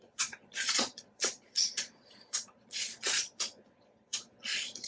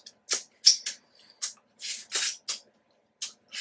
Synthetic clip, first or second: first